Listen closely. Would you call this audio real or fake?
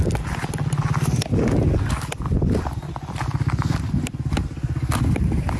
real